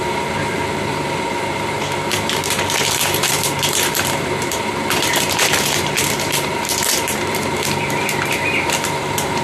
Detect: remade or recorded remade